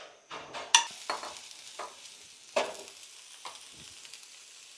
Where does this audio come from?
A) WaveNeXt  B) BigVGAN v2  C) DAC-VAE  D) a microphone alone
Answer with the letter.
D